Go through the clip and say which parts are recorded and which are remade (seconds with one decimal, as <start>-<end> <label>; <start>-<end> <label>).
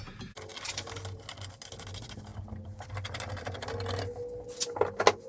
0.0-5.3 recorded